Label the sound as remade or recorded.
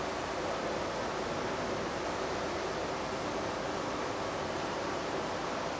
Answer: recorded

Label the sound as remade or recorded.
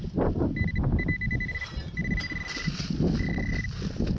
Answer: recorded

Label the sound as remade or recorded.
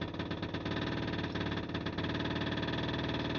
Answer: recorded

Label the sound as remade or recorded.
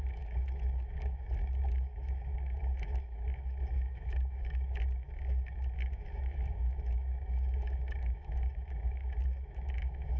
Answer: remade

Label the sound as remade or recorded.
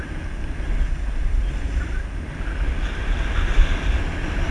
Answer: recorded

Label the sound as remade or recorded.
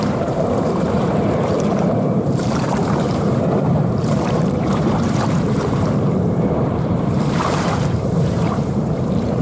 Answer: remade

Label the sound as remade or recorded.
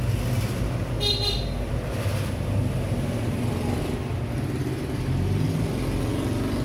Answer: recorded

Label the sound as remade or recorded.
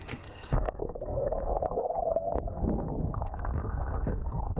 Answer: remade